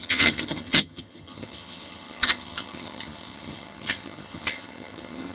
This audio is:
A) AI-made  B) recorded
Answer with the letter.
A